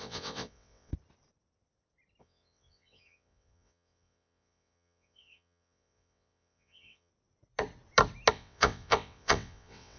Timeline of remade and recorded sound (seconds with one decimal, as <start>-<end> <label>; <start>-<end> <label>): 0.0-0.9 remade; 0.9-2.2 recorded; 2.2-7.1 remade; 7.1-8.3 recorded; 8.3-10.0 remade